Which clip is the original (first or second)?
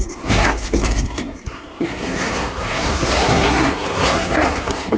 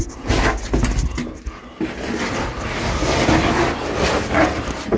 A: second